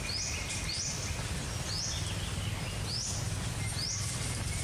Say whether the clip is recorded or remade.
recorded